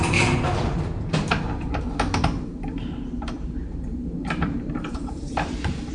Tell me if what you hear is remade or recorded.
remade